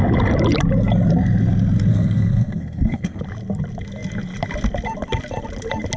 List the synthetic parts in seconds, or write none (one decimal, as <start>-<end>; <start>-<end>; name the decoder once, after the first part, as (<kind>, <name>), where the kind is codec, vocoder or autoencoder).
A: 1.9-3.2 (codec, SNAC)